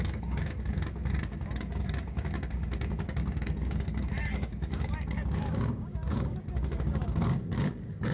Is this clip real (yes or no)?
no